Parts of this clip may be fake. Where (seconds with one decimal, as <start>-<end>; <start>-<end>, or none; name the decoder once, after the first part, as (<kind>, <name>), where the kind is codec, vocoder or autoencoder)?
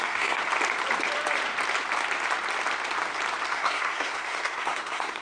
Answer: 0.0-0.4 (codec, SNAC); 3.5-5.2